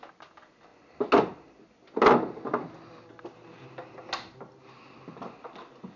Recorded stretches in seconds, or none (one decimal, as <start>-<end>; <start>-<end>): 0.0-6.0